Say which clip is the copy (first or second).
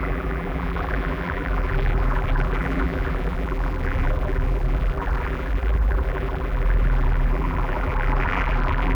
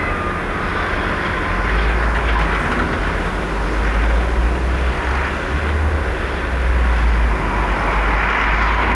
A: first